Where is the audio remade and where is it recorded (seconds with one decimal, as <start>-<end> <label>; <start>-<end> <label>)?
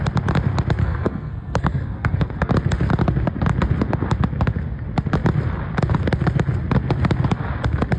0.0-0.8 recorded; 0.8-2.5 remade; 2.5-8.0 recorded